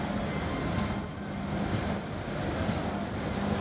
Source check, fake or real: real